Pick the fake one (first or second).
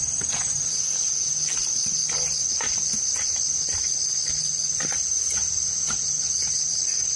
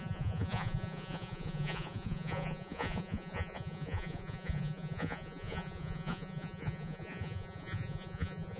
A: second